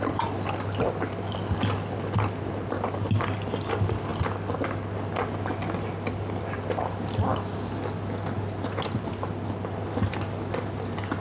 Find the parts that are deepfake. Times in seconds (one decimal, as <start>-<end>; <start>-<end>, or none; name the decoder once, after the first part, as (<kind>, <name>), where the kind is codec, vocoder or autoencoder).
none